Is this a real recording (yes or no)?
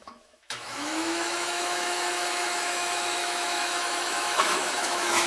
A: no